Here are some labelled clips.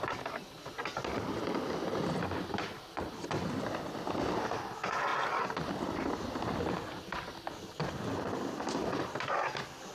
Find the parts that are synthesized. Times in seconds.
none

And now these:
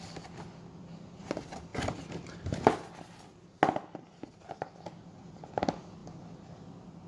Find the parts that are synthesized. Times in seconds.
none

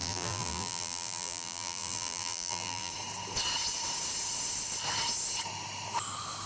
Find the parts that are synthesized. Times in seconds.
0.0-2.9 (vocoder, BigVGAN v2)

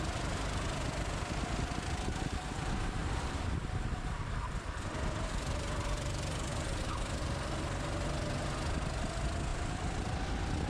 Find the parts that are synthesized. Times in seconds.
3.0-6.8 (vocoder, BigVGAN v2); 9.5-10.7

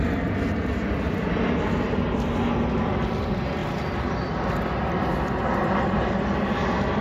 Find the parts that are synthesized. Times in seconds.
none

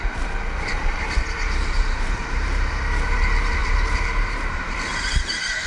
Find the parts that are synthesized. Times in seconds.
0.8-3.2 (vocoder, BigVGAN v2); 3.6-4.6

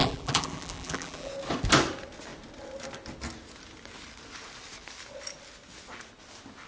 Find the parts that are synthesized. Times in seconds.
0.0-1.3 (vocoder, BigVGAN v2)

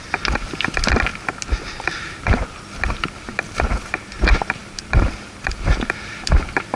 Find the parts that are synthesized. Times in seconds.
4.6-6.8 (vocoder, BigVGAN v2)